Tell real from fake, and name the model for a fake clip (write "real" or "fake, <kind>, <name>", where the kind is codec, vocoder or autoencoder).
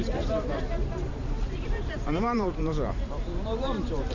fake, vocoder, BigVGAN v2